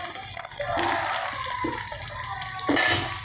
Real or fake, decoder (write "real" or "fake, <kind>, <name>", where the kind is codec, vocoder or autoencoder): real